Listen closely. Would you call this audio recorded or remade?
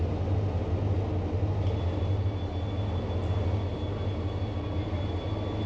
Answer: recorded